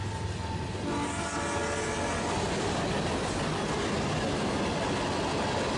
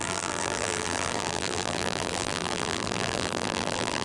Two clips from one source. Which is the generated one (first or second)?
second